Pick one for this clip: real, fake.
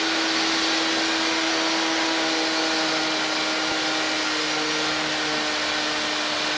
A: real